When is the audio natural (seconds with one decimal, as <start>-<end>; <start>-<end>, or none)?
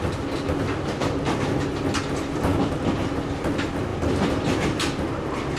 0.0-5.6